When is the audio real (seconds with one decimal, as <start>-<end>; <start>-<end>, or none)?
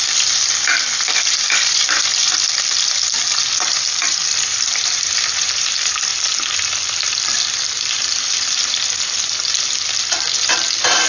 6.1-7.8